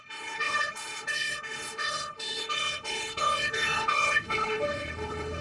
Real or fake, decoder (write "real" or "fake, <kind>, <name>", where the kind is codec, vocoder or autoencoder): fake, codec, HILCodec